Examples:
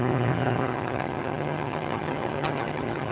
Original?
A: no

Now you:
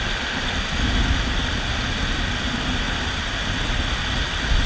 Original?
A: yes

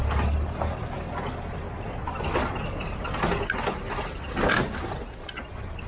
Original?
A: yes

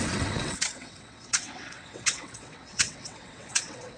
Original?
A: no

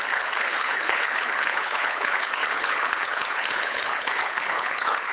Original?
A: no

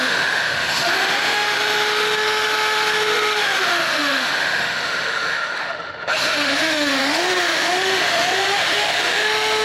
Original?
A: no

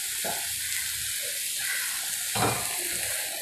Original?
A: yes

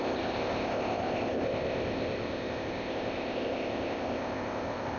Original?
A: no